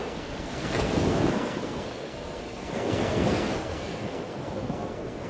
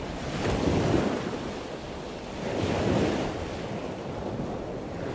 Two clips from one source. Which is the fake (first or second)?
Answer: first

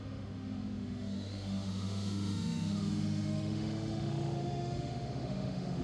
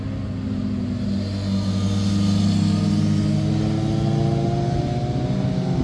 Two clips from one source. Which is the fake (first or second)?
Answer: first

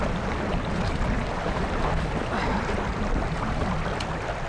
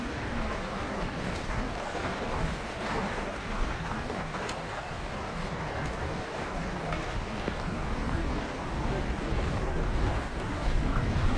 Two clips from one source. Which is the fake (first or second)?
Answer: second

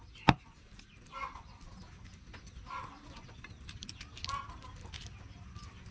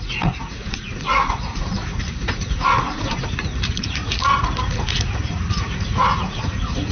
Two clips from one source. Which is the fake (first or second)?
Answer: second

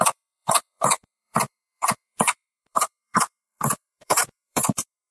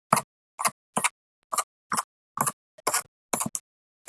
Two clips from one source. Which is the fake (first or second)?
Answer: first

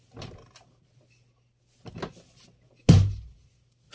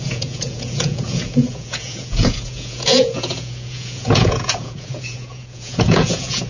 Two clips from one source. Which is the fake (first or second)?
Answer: second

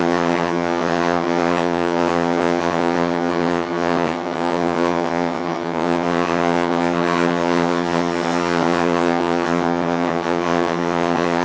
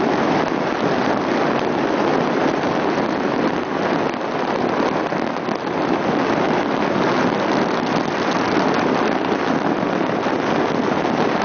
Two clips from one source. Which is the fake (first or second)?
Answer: first